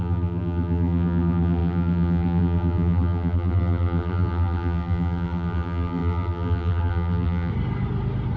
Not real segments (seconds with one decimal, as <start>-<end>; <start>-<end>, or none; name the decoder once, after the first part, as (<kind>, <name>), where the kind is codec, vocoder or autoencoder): 0.0-7.5 (vocoder, BigVGAN v2)